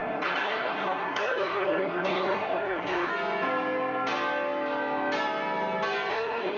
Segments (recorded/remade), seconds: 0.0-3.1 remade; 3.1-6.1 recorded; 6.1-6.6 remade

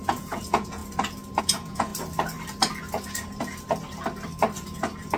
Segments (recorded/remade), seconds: 0.0-0.8 remade; 0.8-1.4 recorded; 1.4-1.9 remade; 1.9-5.2 recorded

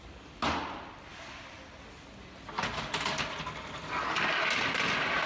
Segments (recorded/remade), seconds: 0.0-5.3 recorded

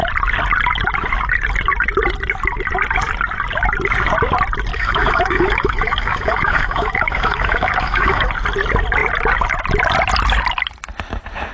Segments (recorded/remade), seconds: 0.0-4.7 recorded; 4.7-8.3 remade; 8.3-11.5 recorded

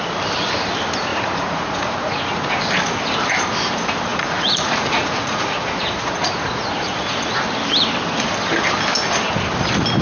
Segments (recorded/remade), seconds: 0.0-1.1 recorded; 1.1-2.6 remade; 2.6-4.1 recorded; 4.1-7.1 remade; 7.1-10.0 recorded

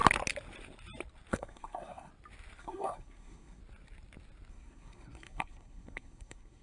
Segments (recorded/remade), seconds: 0.0-1.3 recorded; 1.3-2.1 remade; 2.1-2.6 recorded; 2.6-3.6 remade; 3.6-4.5 recorded; 4.5-6.6 remade

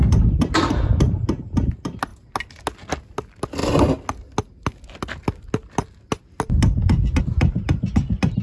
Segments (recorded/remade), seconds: 0.0-8.4 recorded